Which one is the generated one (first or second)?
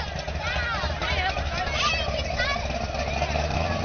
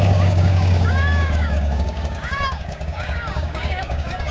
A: second